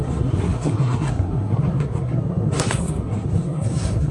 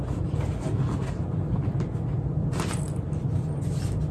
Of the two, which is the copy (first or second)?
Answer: first